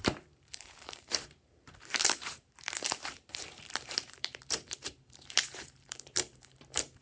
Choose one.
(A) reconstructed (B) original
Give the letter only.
A